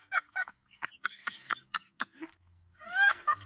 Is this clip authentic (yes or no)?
no